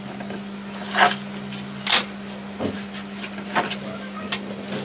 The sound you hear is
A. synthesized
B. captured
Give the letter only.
B